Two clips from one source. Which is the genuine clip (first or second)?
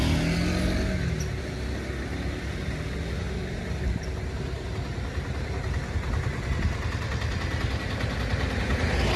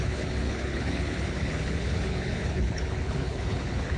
first